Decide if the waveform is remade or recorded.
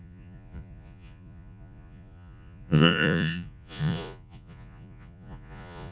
remade